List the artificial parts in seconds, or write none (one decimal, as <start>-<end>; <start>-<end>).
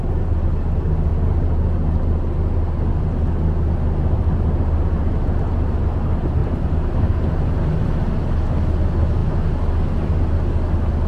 none